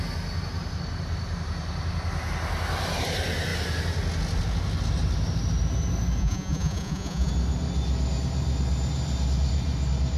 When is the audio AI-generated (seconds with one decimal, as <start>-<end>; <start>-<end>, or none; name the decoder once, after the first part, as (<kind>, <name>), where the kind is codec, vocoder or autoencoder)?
6.2-7.3 (vocoder, Vocos)